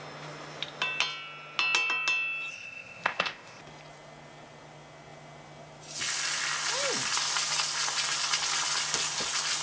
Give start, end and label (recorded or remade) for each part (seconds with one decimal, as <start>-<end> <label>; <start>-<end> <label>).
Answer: 0.0-2.5 recorded; 2.5-3.6 remade; 3.6-9.6 recorded